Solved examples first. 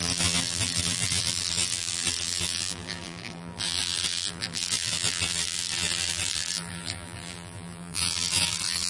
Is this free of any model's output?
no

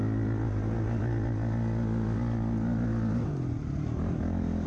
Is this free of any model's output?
yes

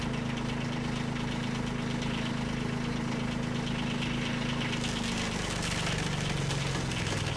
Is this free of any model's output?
yes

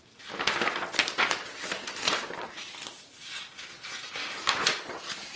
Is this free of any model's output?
yes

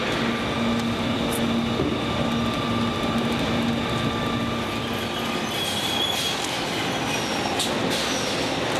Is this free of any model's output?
yes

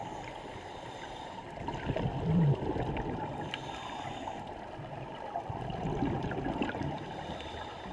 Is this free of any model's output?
no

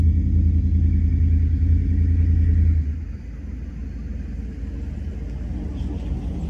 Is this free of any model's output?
yes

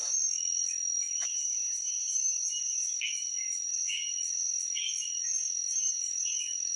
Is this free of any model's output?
no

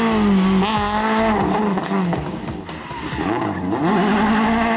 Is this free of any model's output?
yes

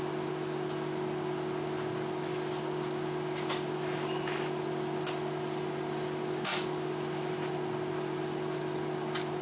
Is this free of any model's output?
yes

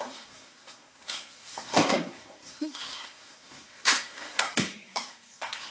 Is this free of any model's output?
no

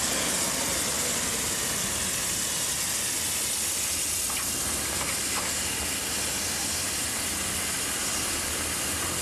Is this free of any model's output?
yes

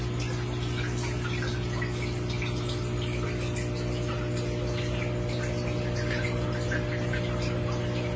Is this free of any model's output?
yes